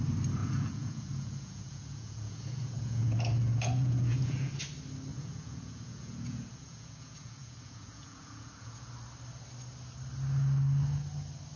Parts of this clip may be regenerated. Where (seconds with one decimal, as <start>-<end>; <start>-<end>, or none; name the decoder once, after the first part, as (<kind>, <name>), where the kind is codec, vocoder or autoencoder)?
0.4-4.6 (vocoder, Vocos); 5.1-8.9